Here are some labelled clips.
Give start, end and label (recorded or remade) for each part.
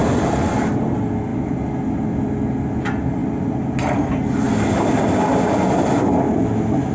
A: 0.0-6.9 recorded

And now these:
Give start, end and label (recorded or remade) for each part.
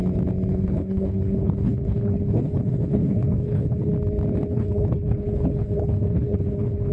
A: 0.0-0.5 recorded; 0.5-3.9 remade; 3.9-4.5 recorded; 4.5-6.9 remade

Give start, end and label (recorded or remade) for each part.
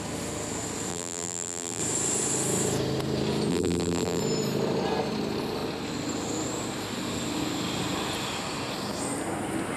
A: 0.0-0.9 recorded; 0.9-1.8 remade; 1.8-3.5 recorded; 3.5-4.2 remade; 4.2-9.8 recorded